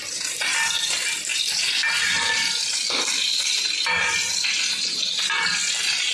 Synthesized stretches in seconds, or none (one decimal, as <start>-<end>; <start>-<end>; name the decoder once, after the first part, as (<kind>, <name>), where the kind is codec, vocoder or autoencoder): none